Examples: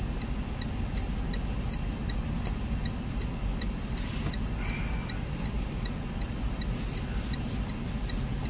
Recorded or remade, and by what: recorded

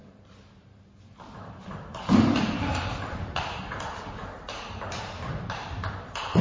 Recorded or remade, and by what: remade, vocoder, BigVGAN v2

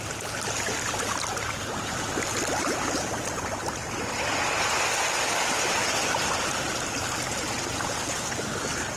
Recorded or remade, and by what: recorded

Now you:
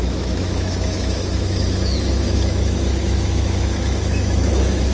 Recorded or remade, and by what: remade, autoencoder, DAC-VAE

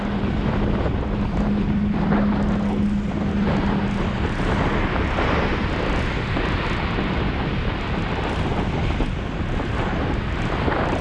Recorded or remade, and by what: recorded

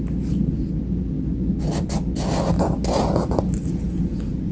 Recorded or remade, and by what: recorded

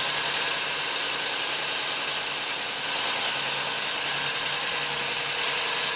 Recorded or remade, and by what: recorded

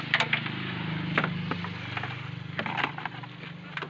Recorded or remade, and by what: recorded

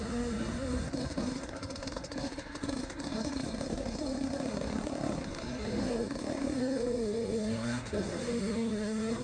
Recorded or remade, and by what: remade, codec, SNAC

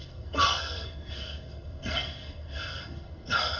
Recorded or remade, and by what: remade, codec, SNAC